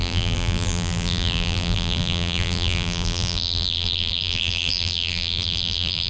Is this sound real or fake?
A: fake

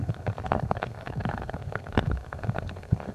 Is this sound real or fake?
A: fake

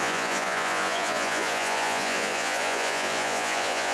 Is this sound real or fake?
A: fake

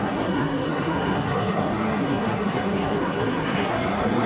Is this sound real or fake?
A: fake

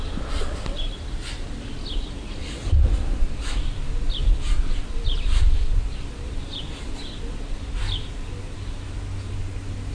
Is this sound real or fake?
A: real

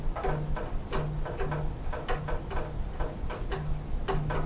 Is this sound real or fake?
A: real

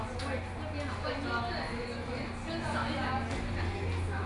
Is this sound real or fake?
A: real